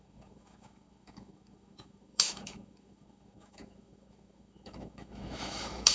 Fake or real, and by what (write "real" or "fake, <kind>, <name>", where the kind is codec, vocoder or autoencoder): fake, autoencoder, DAC-VAE